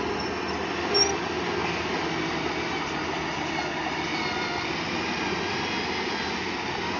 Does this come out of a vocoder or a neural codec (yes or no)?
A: no